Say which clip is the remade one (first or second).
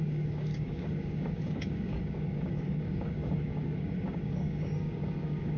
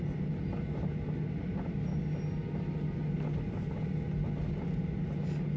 first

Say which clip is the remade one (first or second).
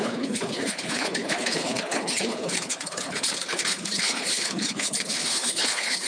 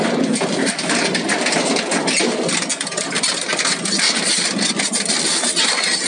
first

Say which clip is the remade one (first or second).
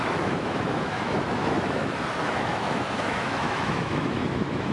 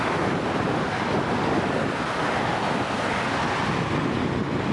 first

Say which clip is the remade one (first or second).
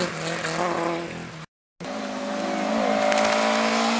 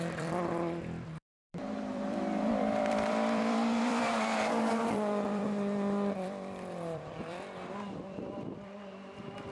second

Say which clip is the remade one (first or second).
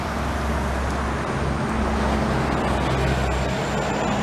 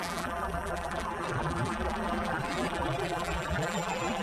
second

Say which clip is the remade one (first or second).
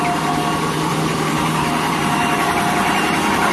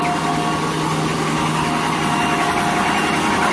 first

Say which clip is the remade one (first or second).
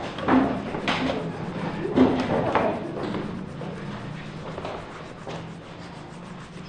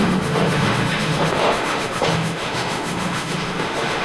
second